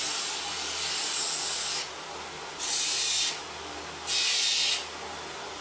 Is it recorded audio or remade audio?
recorded